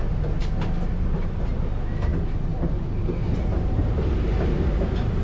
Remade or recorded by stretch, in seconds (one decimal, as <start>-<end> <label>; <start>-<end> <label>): 0.0-5.2 recorded